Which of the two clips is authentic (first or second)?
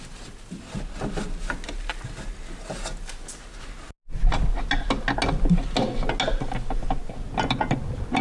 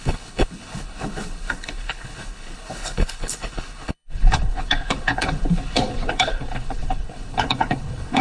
first